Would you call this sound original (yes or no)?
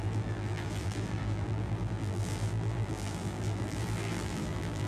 no